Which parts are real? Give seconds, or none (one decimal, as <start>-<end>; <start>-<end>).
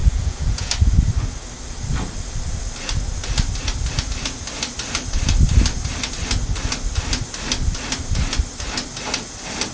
0.7-9.7